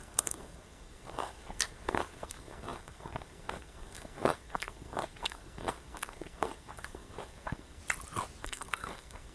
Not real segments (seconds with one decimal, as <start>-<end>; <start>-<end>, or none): 0.0-7.8; 8.4-9.3